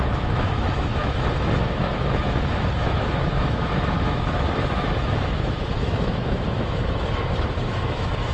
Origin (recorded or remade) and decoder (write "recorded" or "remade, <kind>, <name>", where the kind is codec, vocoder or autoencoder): remade, autoencoder, DAC-VAE